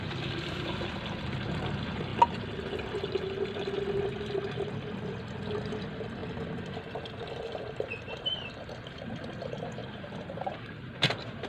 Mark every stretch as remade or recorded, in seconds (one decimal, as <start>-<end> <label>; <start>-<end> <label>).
0.0-9.8 recorded; 9.8-11.5 remade